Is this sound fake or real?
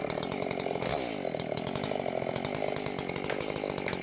real